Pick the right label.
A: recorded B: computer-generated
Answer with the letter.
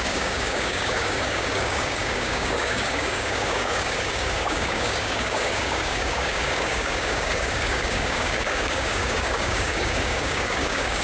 B